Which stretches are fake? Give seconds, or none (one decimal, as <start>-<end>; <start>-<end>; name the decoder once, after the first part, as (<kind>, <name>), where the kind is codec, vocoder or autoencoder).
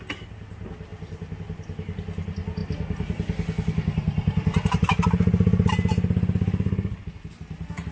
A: none